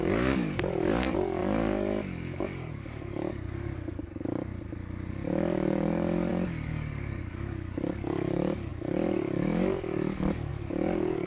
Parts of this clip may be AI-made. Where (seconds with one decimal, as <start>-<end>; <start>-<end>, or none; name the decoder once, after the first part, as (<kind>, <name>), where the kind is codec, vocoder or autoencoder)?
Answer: 0.0-4.5 (codec, DAC); 5.1-11.3